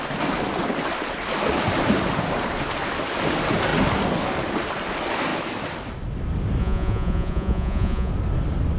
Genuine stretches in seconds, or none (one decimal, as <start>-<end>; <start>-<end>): 0.0-6.6; 8.1-8.8